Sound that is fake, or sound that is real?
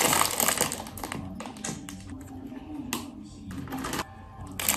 real